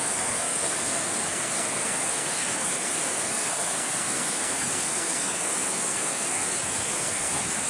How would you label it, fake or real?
fake